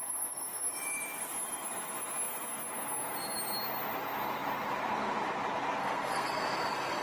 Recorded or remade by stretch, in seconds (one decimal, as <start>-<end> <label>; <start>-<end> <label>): 0.0-5.8 recorded; 5.8-6.3 remade; 6.3-7.0 recorded